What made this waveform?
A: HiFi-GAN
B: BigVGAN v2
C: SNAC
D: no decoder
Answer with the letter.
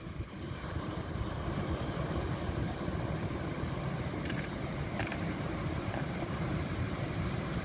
B